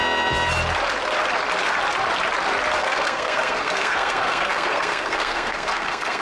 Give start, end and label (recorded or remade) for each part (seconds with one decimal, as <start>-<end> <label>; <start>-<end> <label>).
0.0-2.8 recorded; 2.8-6.2 remade